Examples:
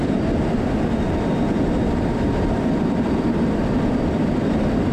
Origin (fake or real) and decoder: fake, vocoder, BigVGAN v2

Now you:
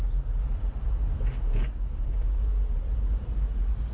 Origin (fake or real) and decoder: real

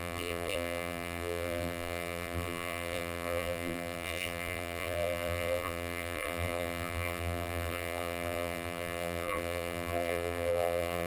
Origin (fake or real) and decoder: fake, vocoder, BigVGAN v2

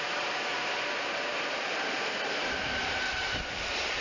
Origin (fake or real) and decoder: fake, vocoder, BigVGAN v2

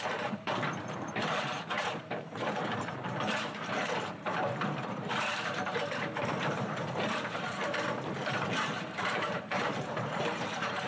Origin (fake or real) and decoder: fake, vocoder, BigVGAN v2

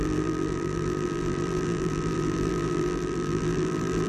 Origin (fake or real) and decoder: fake, vocoder, BigVGAN v2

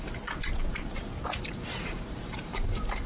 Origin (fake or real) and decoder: fake, vocoder, BigVGAN v2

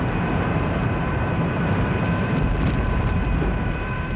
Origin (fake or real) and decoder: fake, vocoder, BigVGAN v2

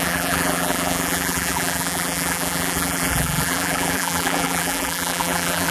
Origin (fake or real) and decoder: fake, vocoder, BigVGAN v2